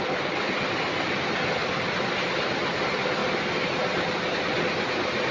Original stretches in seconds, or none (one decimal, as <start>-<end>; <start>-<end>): 0.0-5.3